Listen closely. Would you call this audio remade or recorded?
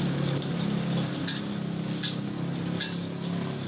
recorded